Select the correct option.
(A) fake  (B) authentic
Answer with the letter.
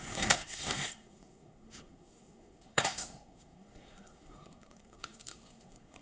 A